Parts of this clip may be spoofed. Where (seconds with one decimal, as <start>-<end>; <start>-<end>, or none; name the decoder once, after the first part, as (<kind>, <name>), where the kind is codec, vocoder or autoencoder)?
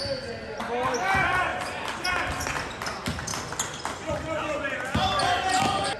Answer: none